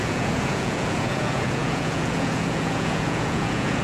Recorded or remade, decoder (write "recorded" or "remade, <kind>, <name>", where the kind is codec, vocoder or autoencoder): remade, vocoder, Vocos